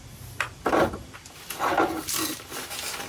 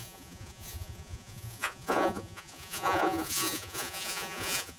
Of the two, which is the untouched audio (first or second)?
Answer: first